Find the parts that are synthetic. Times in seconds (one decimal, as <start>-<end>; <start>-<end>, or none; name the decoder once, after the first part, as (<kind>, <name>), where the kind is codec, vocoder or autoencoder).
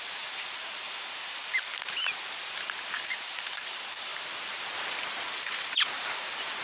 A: 0.0-1.7 (vocoder, BigVGAN v2); 3.0-4.1; 5.3-6.6